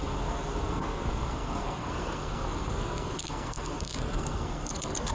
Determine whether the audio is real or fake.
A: fake